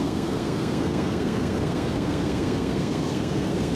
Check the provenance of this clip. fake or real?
fake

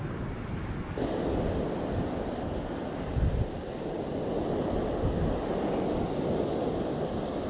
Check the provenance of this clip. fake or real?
real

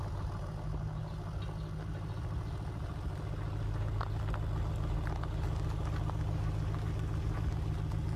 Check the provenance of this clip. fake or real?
real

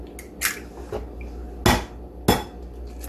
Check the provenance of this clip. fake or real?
real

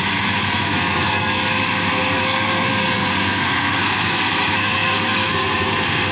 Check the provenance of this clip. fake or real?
fake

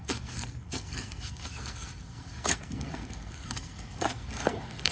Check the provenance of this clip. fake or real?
fake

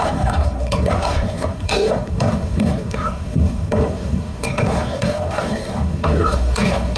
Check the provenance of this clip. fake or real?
fake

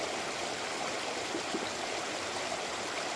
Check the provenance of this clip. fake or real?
real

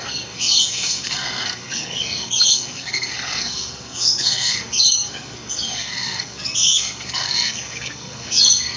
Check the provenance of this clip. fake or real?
fake